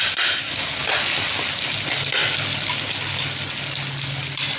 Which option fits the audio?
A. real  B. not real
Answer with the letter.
A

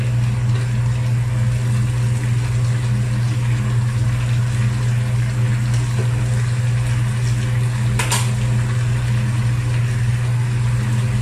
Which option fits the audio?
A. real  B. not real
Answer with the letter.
A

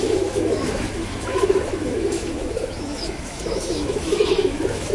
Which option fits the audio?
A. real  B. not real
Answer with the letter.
B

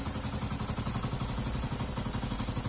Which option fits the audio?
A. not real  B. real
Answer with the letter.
B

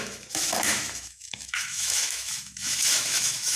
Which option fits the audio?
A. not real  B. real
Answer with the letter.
A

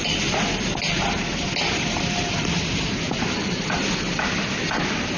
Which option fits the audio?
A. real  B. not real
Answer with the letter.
A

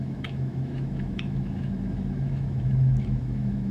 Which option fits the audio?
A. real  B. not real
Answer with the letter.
B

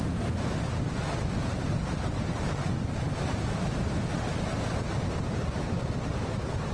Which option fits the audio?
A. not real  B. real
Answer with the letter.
B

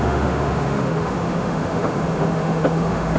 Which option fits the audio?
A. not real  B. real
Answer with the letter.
A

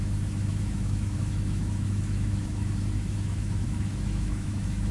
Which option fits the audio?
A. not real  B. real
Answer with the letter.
A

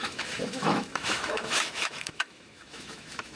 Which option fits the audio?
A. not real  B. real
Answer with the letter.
A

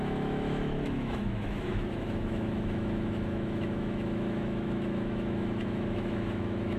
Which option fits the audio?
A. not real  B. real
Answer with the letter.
A